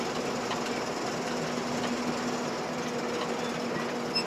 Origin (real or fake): real